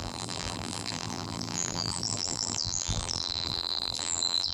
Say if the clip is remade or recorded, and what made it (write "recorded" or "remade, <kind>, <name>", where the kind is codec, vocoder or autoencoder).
remade, vocoder, BigVGAN v2